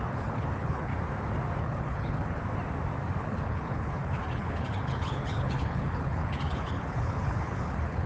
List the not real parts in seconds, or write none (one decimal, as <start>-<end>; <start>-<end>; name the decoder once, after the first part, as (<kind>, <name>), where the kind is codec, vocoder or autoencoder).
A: 0.0-0.9 (codec, HILCodec); 1.6-2.4; 3.2-8.1